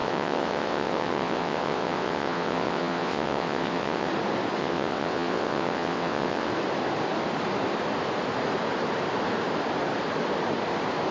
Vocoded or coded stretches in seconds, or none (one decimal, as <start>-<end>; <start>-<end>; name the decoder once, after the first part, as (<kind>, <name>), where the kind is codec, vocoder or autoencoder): 0.0-4.1 (vocoder, WaveNeXt); 4.6-6.5